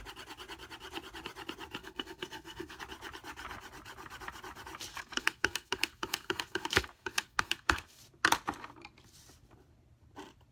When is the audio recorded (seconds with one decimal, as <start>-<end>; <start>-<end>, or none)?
0.0-1.8; 2.8-4.9; 8.0-10.5